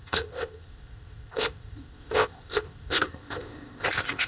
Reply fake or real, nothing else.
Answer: fake